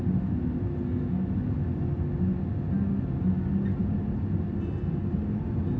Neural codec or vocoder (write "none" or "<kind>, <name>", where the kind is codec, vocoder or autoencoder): none